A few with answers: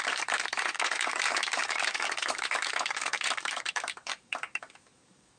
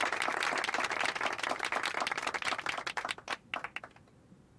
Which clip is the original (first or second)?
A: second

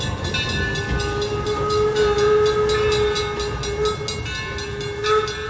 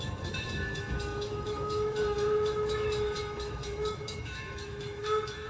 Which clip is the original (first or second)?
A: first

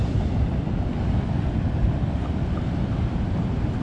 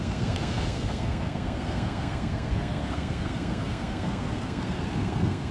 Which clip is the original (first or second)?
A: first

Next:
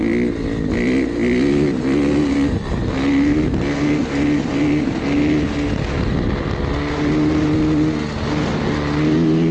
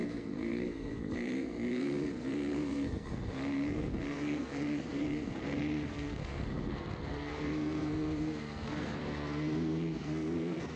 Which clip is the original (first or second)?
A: first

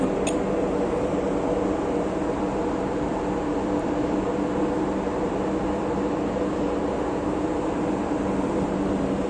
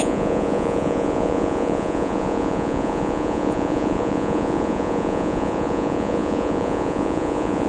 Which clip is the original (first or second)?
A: first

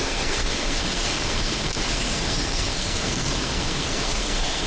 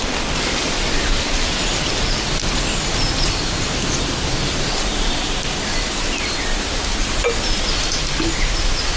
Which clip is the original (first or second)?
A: second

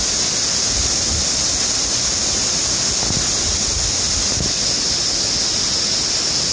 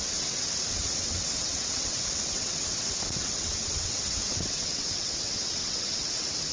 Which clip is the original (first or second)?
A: first